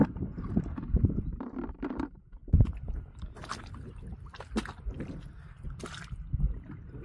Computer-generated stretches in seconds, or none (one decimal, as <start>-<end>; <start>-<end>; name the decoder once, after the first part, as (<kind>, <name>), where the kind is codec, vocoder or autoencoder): none